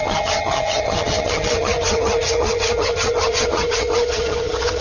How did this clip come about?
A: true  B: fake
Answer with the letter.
B